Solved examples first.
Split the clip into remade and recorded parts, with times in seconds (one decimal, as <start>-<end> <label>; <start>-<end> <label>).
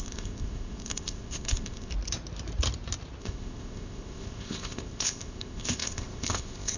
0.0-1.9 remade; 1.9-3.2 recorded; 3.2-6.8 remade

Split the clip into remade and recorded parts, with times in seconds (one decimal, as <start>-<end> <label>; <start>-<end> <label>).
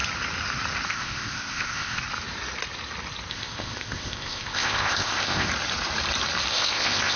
0.0-0.9 recorded; 0.9-2.0 remade; 2.0-3.3 recorded; 3.3-5.5 remade; 5.5-6.5 recorded; 6.5-7.2 remade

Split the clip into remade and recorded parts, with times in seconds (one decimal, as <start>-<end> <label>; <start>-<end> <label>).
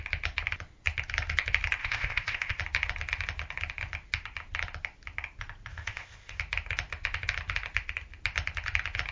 0.0-1.8 recorded; 1.8-2.6 remade; 2.6-5.7 recorded; 5.7-6.4 remade; 6.4-9.1 recorded